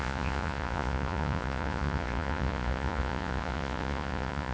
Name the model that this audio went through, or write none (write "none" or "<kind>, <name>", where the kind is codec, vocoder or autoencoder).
vocoder, Vocos